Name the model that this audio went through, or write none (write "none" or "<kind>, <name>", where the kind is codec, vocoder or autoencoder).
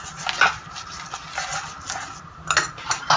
none